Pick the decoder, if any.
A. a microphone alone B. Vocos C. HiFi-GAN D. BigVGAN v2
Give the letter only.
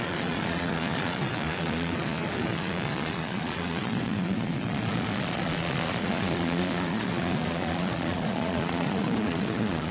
B